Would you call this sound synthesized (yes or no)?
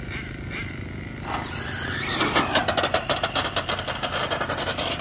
no